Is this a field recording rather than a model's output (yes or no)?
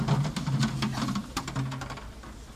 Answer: yes